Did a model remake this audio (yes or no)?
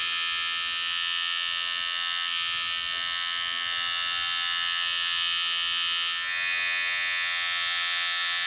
no